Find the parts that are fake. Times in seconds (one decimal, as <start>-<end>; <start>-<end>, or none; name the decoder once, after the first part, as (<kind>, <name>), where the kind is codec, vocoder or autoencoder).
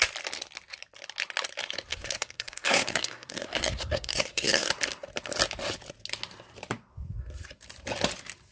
1.9-4.7 (codec, SNAC)